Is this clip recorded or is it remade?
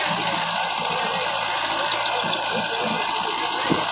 recorded